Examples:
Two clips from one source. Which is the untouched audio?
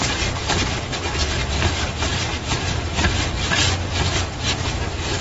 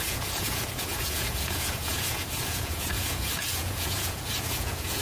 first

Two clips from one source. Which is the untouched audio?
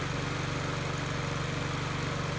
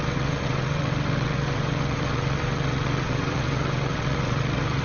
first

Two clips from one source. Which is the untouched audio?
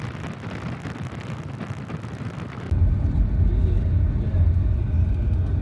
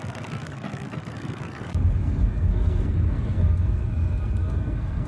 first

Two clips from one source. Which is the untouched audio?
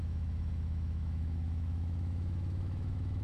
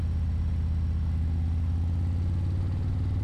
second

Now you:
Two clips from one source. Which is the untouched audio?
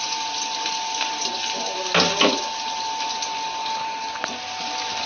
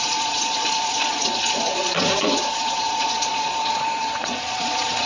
first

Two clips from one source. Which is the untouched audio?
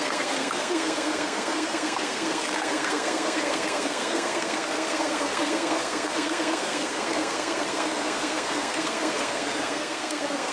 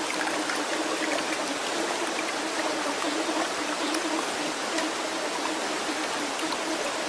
second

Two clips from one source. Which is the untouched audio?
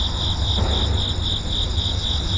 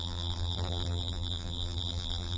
first